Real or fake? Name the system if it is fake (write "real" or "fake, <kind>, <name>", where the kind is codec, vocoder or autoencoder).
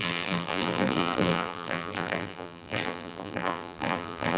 fake, vocoder, BigVGAN v2